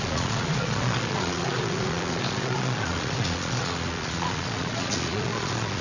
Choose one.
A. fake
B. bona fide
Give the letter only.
A